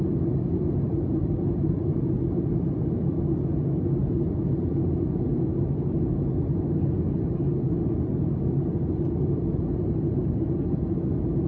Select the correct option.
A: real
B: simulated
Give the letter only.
A